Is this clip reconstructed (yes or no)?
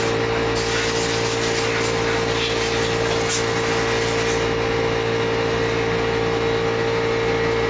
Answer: no